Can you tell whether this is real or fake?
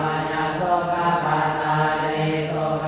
real